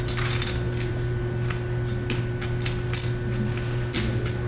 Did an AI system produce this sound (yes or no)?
no